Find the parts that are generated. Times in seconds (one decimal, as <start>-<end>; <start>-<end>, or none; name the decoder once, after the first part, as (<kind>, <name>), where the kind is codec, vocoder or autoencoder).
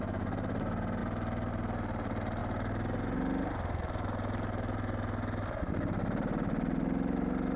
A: none